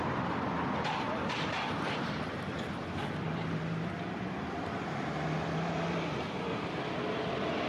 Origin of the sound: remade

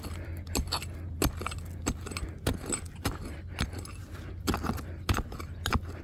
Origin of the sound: recorded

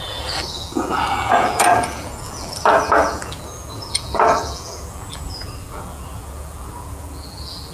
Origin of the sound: remade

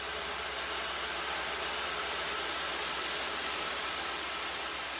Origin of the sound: recorded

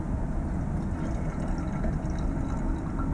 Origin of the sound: recorded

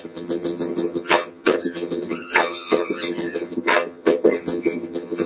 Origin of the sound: remade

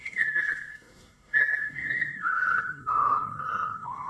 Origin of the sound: remade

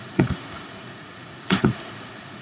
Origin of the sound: remade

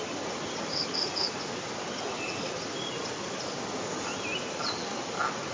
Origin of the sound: recorded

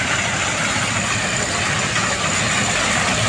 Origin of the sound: recorded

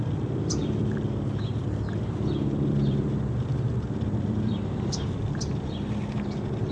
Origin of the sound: remade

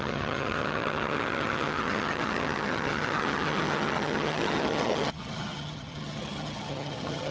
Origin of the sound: remade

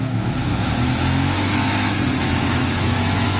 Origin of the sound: remade